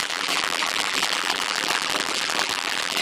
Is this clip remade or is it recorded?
remade